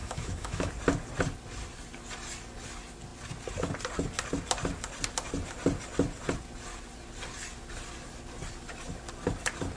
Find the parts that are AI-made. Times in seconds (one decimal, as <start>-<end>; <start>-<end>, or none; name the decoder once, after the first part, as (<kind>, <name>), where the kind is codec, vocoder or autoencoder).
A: 0.0-0.7 (autoencoder, DAC-VAE)